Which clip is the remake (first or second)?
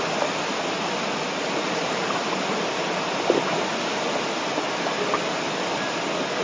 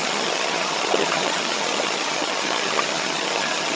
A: second